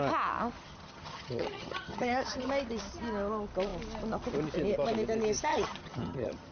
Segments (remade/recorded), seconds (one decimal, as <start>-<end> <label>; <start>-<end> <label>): 0.0-0.6 recorded; 0.6-2.5 remade; 2.5-5.5 recorded; 5.5-6.5 remade